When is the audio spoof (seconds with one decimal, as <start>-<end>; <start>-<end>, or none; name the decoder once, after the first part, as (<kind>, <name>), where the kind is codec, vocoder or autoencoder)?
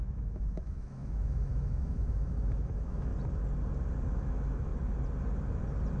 0.0-3.1 (autoencoder, DAC-VAE); 4.1-4.7